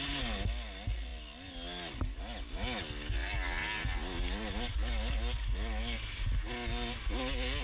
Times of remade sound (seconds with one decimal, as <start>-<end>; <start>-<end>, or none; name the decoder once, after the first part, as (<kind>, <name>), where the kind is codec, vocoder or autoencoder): none